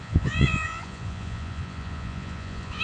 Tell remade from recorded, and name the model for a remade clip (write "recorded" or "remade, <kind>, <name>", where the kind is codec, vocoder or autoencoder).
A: remade, vocoder, Vocos